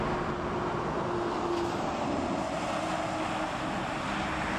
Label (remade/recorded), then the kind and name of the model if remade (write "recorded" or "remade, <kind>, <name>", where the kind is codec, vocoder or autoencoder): recorded